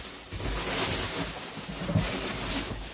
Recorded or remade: recorded